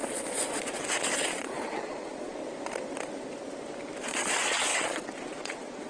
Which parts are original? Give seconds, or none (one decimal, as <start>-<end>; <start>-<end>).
0.8-1.3; 2.4-4.0